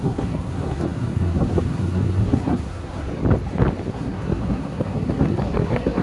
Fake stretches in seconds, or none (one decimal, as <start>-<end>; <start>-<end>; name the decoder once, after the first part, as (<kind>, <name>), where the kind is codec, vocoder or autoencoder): 0.0-3.1 (codec, SNAC); 3.9-6.0